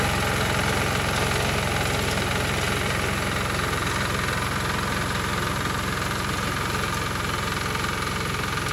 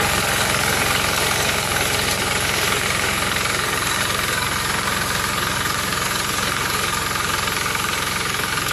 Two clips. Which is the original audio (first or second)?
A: first